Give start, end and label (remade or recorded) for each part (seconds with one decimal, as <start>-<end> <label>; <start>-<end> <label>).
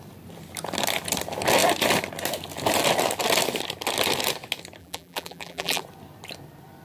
0.0-4.8 recorded; 4.8-5.8 remade; 5.8-6.8 recorded